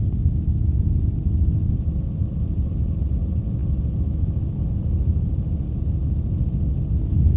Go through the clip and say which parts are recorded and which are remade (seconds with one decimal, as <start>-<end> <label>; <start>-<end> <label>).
0.0-7.4 recorded